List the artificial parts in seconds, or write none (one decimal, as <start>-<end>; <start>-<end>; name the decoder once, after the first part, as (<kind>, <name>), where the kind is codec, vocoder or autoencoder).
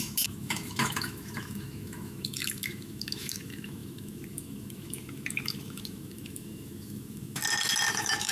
0.0-7.4 (autoencoder, DAC-VAE); 7.9-8.3